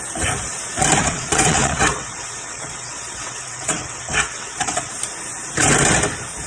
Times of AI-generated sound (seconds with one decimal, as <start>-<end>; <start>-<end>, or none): 1.0-4.9